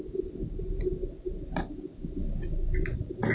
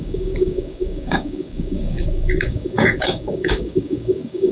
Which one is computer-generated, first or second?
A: second